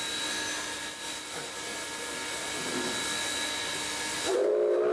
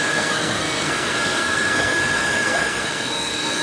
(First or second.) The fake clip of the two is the second